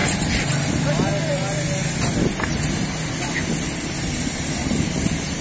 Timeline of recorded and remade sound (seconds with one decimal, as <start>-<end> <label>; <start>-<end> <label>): 0.0-5.4 recorded